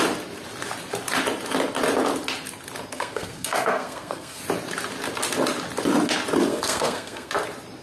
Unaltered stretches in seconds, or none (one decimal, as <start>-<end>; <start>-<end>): 0.0-2.9; 4.4-6.5; 7.3-7.8